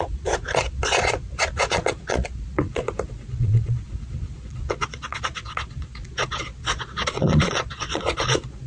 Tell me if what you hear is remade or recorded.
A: remade